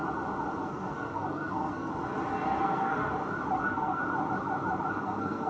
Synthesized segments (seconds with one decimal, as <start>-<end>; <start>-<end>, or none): 0.6-1.9; 2.6-3.0; 3.6-4.0; 4.9-5.5